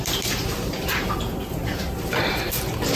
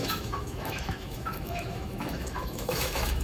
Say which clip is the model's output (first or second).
second